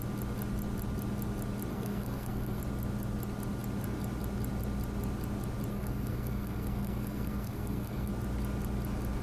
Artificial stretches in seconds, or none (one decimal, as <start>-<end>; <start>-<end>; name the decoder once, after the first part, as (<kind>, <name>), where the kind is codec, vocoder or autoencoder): 1.7-2.6 (codec, SNAC); 5.7-8.1